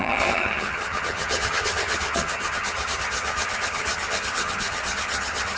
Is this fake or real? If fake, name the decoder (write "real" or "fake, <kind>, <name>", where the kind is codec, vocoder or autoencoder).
fake, vocoder, HiFi-GAN